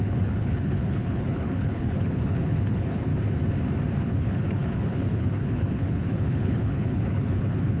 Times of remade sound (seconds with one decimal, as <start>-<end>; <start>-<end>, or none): 0.0-3.1; 4.0-7.8